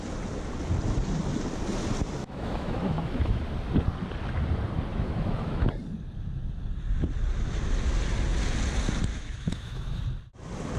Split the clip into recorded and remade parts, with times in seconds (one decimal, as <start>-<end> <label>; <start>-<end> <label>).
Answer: 0.0-2.2 recorded; 2.2-3.4 remade; 3.4-4.9 recorded; 4.9-5.7 remade; 5.7-9.1 recorded; 9.1-10.0 remade; 10.0-10.8 recorded